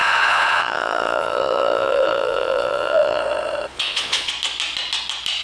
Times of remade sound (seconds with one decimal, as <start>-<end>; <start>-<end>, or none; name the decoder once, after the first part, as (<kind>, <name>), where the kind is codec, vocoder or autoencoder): 0.0-3.2 (vocoder, Vocos); 3.7-4.3